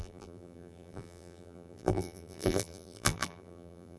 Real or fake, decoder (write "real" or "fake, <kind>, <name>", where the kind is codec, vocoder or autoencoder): fake, vocoder, BigVGAN v2